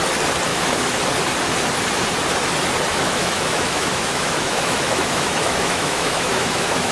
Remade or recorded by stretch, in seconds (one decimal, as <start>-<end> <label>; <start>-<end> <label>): 0.0-0.5 recorded; 0.5-1.0 remade; 1.0-2.9 recorded; 2.9-6.9 remade